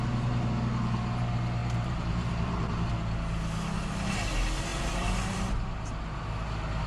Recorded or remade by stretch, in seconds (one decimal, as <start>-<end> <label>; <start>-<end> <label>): 0.0-1.6 recorded; 1.6-2.9 remade; 2.9-4.7 recorded; 4.7-5.5 remade; 5.5-6.9 recorded